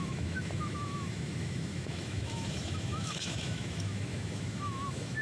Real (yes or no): no